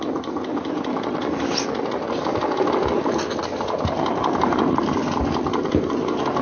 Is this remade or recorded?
recorded